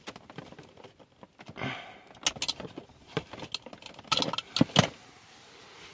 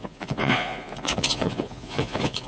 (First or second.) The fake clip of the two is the second